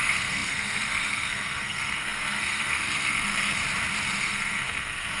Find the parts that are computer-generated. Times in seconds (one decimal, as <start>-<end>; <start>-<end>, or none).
0.0-3.6; 4.2-5.2